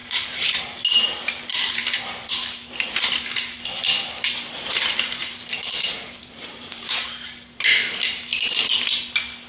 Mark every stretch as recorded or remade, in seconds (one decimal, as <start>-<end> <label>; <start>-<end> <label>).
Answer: 0.0-0.6 remade; 0.6-1.5 recorded; 1.5-2.3 remade; 2.3-5.2 recorded; 5.2-7.1 remade; 7.1-9.5 recorded